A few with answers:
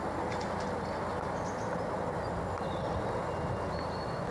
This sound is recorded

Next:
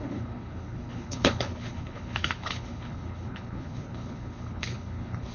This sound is remade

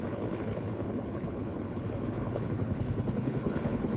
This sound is remade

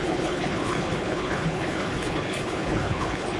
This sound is remade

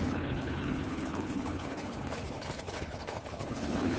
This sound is remade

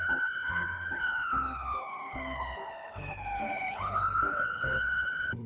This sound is remade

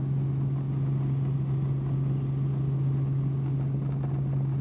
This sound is recorded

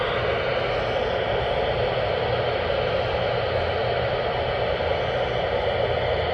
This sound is recorded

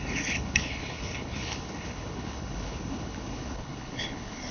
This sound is remade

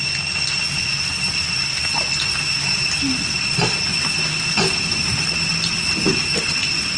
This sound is recorded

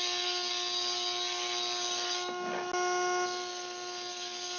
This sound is recorded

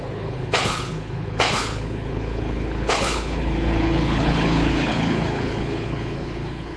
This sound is remade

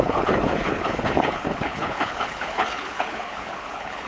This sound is remade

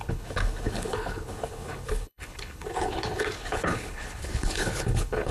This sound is remade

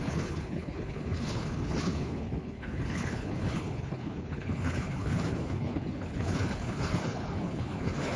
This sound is remade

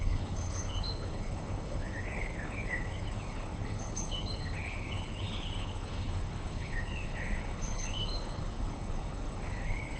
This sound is remade